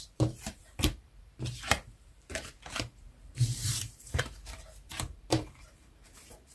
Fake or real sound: fake